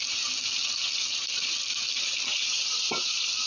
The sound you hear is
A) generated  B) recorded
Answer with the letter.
B